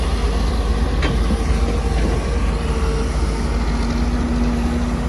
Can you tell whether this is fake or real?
real